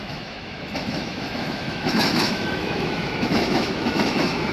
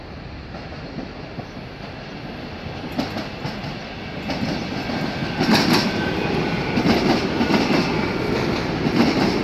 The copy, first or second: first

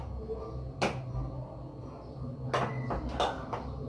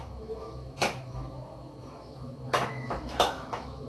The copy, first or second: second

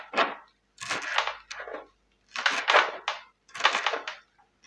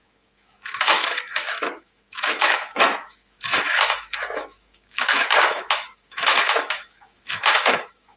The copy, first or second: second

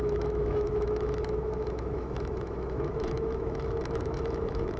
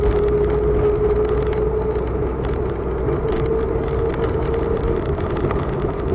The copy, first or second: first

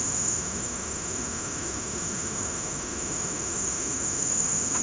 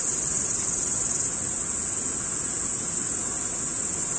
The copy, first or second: first